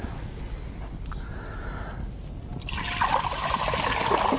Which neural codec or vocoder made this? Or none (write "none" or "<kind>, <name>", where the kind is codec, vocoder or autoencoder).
none